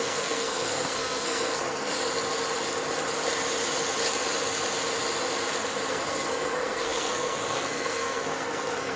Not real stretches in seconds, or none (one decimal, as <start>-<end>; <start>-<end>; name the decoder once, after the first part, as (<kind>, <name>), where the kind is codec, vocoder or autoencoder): 0.0-1.9 (codec, SNAC); 5.9-9.0